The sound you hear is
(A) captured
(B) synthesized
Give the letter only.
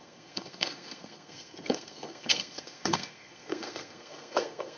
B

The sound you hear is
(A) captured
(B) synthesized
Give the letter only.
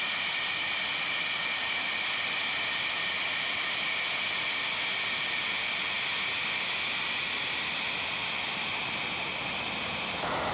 A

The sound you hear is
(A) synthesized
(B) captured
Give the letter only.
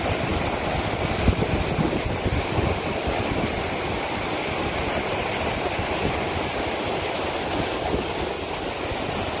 B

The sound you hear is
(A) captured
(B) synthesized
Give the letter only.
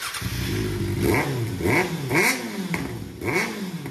A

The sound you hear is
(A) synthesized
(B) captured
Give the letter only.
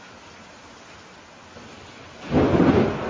B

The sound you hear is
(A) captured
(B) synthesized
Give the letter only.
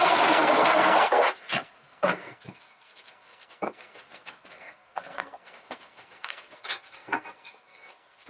B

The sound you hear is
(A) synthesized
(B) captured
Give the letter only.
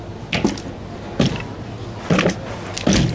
B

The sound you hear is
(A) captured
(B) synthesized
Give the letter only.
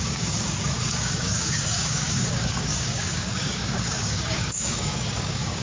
B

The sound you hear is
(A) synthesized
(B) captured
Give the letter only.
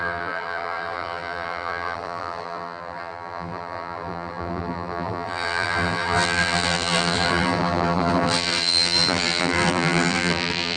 A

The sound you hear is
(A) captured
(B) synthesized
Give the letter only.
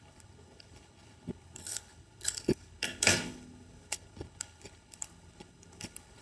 B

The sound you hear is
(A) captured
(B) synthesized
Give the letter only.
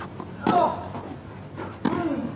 A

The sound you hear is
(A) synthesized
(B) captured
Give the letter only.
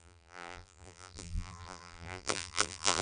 A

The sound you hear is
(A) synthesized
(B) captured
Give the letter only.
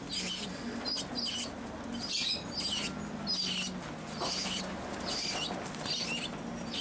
B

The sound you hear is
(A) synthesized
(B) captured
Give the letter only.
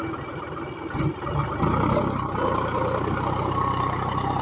B